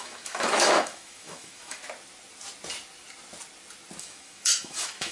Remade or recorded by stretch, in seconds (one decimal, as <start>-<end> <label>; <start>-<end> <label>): 0.0-1.8 remade; 1.8-4.0 recorded; 4.0-5.1 remade